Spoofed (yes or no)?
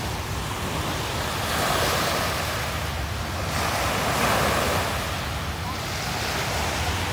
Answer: no